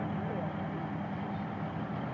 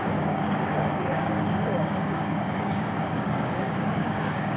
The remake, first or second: second